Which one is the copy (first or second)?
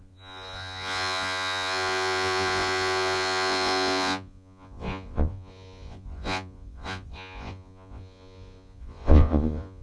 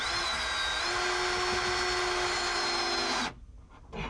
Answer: first